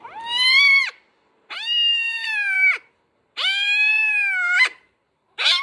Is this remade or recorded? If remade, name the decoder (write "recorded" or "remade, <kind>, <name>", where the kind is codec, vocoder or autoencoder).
remade, vocoder, BigVGAN v2